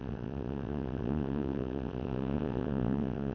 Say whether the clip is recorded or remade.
remade